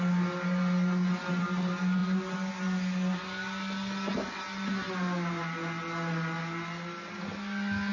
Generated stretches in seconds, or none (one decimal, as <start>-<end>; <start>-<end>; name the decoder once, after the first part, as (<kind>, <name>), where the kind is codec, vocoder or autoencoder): none